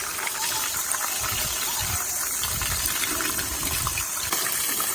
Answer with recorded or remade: recorded